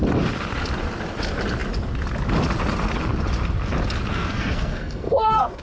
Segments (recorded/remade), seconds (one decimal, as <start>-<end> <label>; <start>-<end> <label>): 0.0-4.1 recorded; 4.1-5.6 remade